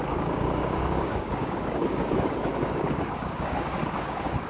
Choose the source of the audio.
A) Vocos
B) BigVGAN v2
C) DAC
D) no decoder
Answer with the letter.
C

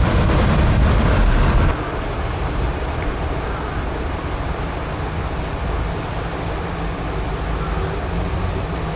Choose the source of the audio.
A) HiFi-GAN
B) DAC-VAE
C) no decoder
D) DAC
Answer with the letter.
C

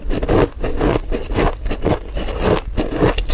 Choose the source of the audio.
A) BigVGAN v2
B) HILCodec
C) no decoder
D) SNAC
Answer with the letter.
C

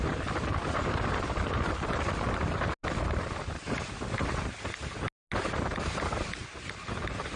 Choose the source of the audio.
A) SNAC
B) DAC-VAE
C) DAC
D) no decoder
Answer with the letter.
D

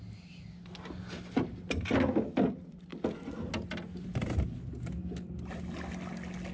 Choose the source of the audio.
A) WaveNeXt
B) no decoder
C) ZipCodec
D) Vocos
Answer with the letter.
B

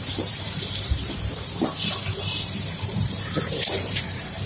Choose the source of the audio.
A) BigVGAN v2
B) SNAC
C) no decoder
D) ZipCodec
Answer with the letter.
A